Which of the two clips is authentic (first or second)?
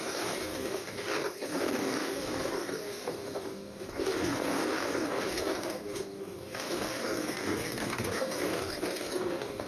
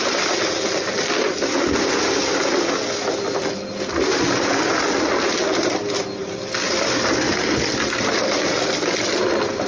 second